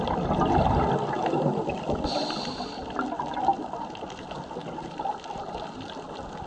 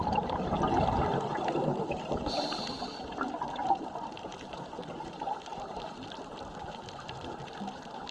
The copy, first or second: second